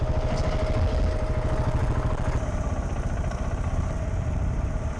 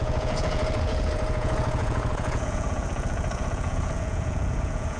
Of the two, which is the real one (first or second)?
first